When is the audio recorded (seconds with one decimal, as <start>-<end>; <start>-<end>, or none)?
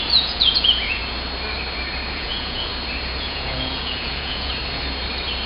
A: 1.0-2.1; 2.7-3.2; 4.5-5.5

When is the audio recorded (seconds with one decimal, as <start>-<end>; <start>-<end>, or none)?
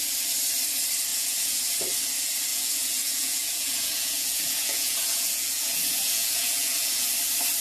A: 0.0-1.1; 1.8-2.5; 7.1-7.6